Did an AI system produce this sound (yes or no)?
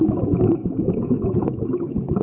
yes